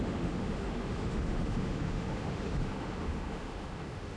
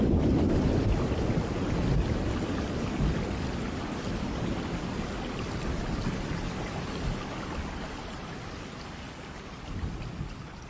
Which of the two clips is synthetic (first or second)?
first